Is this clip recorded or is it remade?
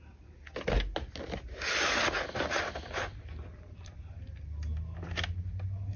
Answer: recorded